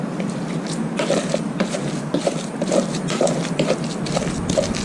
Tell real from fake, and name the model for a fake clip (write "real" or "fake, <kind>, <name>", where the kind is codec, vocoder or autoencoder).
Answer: real